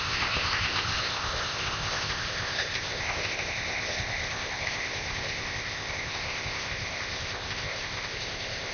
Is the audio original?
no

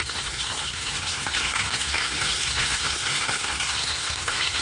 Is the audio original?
no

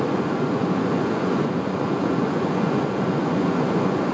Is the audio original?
no